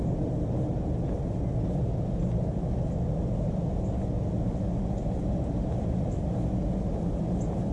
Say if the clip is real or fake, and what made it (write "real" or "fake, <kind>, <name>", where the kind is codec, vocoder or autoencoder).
real